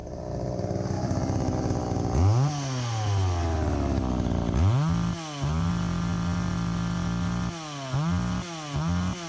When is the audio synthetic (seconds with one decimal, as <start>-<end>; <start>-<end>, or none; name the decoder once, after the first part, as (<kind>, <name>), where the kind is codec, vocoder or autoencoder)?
0.0-1.8 (vocoder, BigVGAN v2)